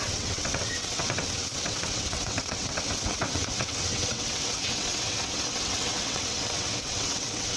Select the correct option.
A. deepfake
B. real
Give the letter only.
A